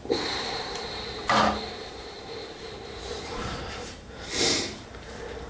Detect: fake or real fake